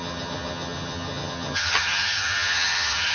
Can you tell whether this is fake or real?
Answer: fake